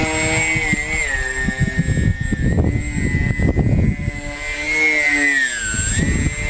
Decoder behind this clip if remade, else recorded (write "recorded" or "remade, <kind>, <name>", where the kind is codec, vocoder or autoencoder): recorded